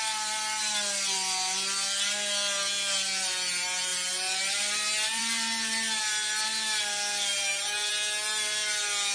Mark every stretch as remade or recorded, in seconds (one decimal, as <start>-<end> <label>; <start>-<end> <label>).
0.0-7.3 recorded; 7.3-7.9 remade; 7.9-9.1 recorded